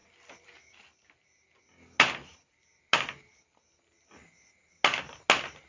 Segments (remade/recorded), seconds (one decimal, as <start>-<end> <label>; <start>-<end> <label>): 0.0-5.7 recorded